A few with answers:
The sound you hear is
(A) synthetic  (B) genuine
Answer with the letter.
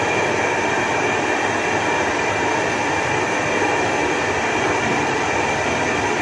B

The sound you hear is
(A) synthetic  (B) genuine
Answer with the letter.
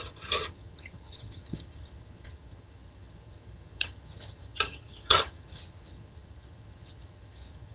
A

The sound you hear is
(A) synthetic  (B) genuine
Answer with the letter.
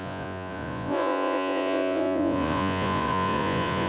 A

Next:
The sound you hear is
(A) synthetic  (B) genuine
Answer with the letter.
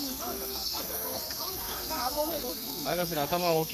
A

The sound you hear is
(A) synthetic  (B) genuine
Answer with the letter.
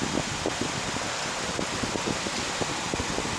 B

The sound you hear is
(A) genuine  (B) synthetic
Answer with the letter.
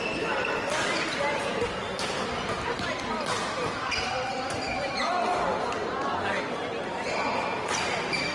A